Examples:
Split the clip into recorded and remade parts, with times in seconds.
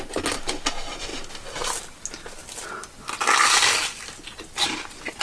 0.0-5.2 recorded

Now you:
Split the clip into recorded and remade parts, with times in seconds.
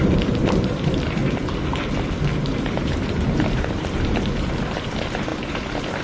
0.0-1.2 remade; 1.2-2.4 recorded; 2.4-6.0 remade